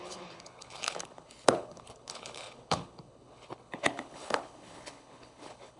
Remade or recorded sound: remade